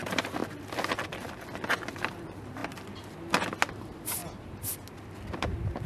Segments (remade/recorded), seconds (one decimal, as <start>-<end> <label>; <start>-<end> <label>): 0.0-0.4 remade; 0.4-2.1 recorded; 2.1-2.6 remade; 2.6-3.7 recorded; 3.7-4.2 remade; 4.2-5.4 recorded; 5.4-5.9 remade